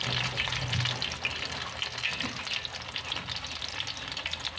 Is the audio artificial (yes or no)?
no